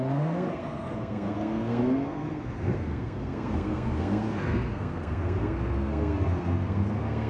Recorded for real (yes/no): no